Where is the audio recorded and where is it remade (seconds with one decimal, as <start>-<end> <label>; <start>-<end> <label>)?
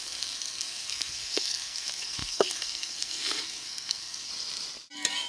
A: 0.0-4.3 remade; 4.3-5.3 recorded